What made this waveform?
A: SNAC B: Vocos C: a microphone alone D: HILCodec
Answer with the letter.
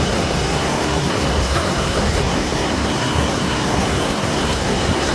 A